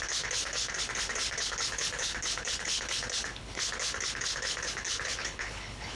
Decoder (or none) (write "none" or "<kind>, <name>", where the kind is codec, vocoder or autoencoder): codec, HILCodec